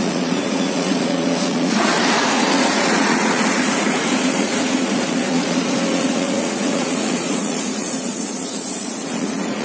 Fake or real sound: fake